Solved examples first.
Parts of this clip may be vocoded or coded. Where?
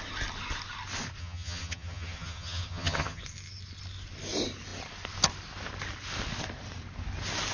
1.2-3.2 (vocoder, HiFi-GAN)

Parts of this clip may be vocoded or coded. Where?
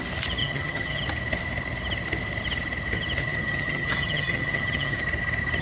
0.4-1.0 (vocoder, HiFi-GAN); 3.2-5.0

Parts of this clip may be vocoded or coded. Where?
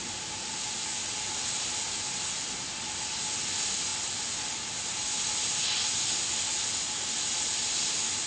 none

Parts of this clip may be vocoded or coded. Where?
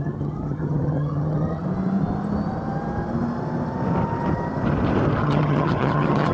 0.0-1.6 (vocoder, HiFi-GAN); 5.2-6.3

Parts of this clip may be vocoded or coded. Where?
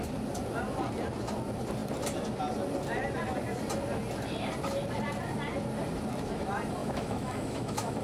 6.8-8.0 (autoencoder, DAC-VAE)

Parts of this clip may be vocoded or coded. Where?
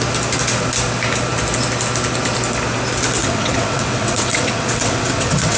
3.2-5.6 (vocoder, WaveNeXt)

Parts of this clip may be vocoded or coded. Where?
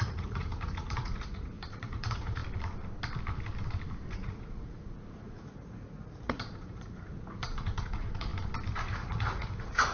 0.0-2.4 (vocoder, Vocos); 4.1-8.3; 8.8-9.9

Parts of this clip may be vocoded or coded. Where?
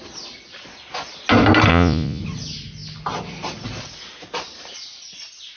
1.7-2.2 (vocoder, Vocos)